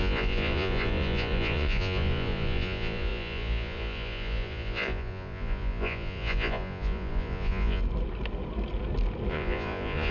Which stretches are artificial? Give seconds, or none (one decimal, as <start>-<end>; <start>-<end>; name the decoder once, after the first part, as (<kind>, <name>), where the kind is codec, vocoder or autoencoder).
0.0-7.8 (vocoder, Vocos); 9.3-10.1